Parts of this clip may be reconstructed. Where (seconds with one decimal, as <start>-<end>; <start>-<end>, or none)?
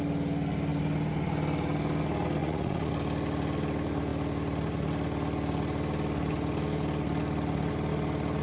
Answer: 2.4-2.9